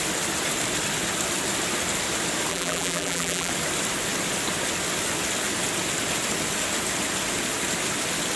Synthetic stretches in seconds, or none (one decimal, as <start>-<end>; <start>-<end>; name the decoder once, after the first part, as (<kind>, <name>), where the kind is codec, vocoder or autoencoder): 2.5-3.5 (vocoder, BigVGAN v2)